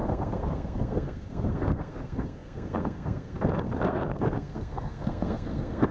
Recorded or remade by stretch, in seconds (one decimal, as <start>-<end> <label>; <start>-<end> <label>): 0.0-5.9 remade